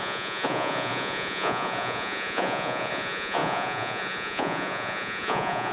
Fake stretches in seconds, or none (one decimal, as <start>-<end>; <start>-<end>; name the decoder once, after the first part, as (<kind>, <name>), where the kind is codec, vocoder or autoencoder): 0.0-5.7 (vocoder, Vocos)